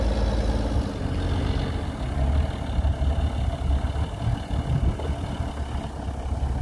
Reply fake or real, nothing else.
real